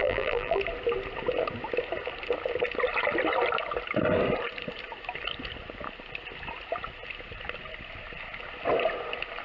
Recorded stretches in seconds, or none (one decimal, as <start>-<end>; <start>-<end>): 0.6-9.4